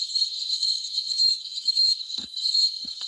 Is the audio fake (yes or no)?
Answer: yes